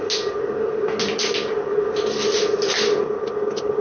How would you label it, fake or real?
real